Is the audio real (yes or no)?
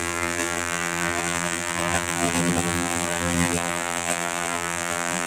no